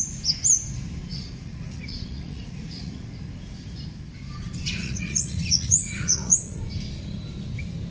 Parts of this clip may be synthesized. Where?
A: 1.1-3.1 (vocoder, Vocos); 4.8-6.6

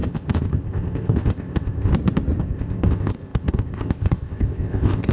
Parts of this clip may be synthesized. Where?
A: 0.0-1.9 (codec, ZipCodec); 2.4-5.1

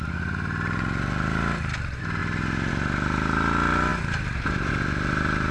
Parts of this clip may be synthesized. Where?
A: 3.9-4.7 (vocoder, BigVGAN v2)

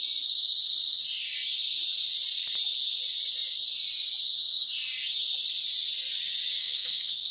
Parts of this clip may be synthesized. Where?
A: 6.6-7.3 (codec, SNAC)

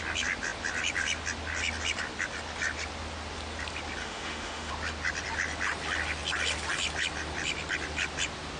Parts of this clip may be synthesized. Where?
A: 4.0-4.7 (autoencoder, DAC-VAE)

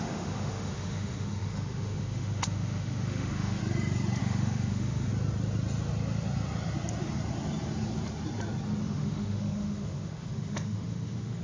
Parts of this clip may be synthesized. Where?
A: 0.0-3.6 (autoencoder, DAC-VAE); 4.2-5.1; 8.8-11.4

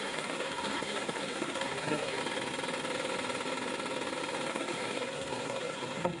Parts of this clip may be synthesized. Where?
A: 0.0-2.2 (codec, SNAC); 4.5-6.2

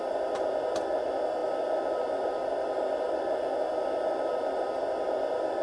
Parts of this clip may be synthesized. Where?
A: none